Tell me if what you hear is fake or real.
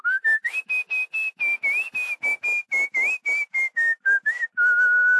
real